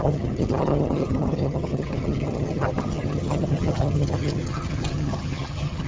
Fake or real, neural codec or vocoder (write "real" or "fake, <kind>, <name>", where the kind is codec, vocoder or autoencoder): fake, vocoder, HiFi-GAN